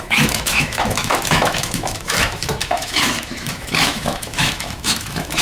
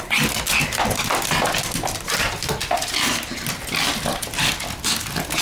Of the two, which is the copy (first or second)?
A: first